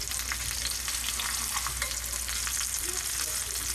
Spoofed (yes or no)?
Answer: no